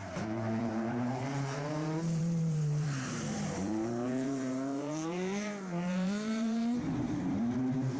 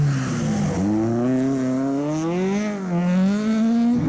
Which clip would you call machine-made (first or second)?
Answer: first